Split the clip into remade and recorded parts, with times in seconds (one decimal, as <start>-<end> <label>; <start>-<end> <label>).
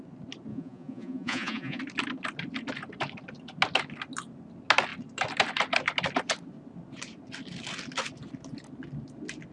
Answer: 0.0-0.5 recorded; 0.5-1.8 remade; 1.8-9.5 recorded